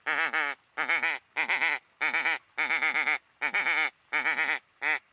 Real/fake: real